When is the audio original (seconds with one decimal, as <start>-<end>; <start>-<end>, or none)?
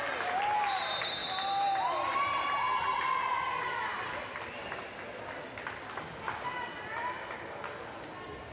0.0-8.5